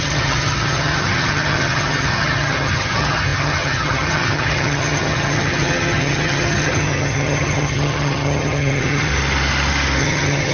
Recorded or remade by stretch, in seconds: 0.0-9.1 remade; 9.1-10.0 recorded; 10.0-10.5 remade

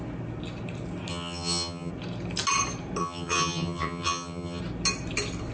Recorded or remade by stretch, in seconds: 0.0-1.1 recorded; 1.1-1.9 remade; 1.9-3.0 recorded; 3.0-4.6 remade; 4.6-5.5 recorded

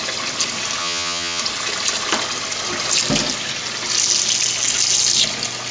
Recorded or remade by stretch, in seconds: 0.0-0.8 recorded; 0.8-1.4 remade; 1.4-5.7 recorded

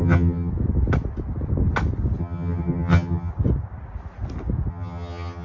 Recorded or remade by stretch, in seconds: 0.0-0.5 remade; 0.5-2.2 recorded; 2.2-3.3 remade; 3.3-4.7 recorded; 4.7-5.4 remade

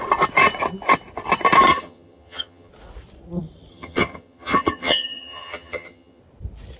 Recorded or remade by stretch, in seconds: 0.0-1.7 recorded; 1.7-2.7 remade; 2.7-3.7 recorded; 3.7-6.2 remade; 6.2-6.8 recorded

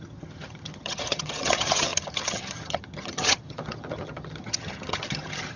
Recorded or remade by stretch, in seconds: 0.0-5.6 remade